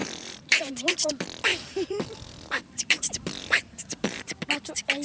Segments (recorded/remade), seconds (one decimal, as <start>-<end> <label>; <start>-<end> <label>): 0.0-1.1 remade; 1.1-1.5 recorded; 1.5-4.5 remade; 4.5-5.0 recorded

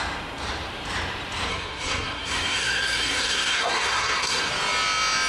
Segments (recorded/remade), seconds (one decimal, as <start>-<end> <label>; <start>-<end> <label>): 0.0-1.5 recorded; 1.5-4.5 remade; 4.5-5.3 recorded

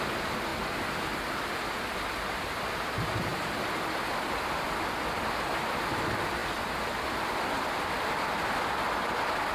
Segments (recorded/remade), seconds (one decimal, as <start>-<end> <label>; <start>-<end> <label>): 0.0-9.5 recorded

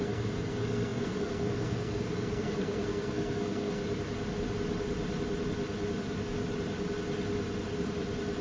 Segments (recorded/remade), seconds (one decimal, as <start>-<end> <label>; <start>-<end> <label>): 0.0-3.8 remade; 3.8-8.4 recorded